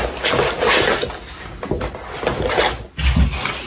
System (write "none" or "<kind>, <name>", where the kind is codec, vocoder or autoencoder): none